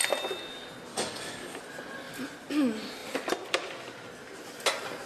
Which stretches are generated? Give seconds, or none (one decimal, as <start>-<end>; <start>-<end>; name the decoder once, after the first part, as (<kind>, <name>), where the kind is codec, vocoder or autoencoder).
0.9-1.6 (codec, DAC)